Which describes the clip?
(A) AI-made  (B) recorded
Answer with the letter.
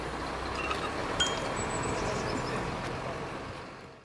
B